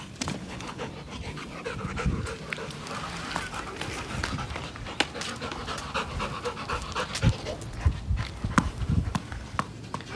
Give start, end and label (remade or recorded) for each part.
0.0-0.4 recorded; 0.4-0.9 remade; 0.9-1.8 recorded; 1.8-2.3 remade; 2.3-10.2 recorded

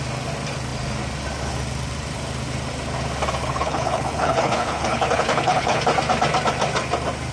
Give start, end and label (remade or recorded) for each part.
0.0-3.4 recorded; 3.4-5.8 remade; 5.8-7.3 recorded

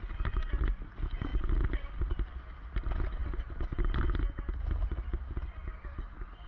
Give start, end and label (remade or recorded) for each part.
0.0-6.5 recorded

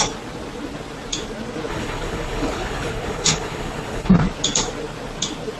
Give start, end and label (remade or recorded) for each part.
0.0-1.7 recorded; 1.7-4.1 remade; 4.1-5.6 recorded

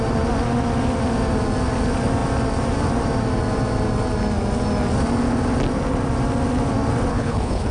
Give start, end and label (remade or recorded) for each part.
0.0-7.1 recorded; 7.1-7.7 remade